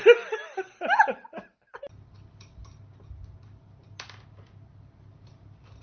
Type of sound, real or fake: real